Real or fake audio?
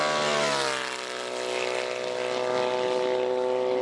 real